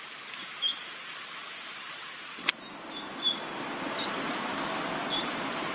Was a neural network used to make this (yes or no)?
no